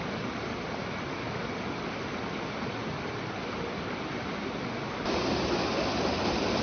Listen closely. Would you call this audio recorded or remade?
recorded